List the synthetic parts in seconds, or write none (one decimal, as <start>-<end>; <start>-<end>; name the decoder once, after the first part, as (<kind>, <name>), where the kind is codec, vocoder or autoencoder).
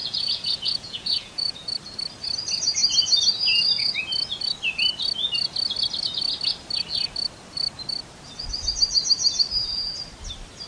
0.0-1.7 (vocoder, Vocos)